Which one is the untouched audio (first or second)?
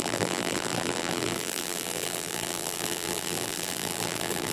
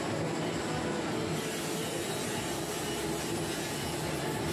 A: second